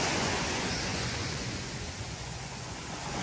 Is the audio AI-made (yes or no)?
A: yes